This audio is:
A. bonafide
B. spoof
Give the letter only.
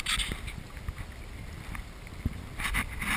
A